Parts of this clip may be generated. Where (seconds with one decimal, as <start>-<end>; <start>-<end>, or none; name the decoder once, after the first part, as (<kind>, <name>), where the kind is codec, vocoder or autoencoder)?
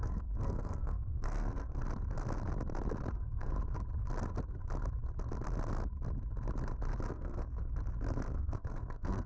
0.0-1.8 (codec, SNAC); 3.1-3.5; 7.1-7.6; 8.3-9.3